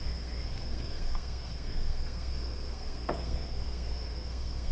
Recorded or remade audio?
remade